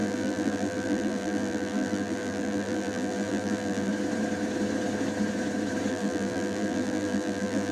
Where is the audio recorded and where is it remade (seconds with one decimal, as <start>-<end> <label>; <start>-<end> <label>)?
0.0-3.9 remade; 3.9-5.9 recorded; 5.9-7.7 remade